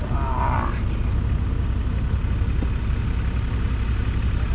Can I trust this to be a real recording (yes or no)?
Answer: yes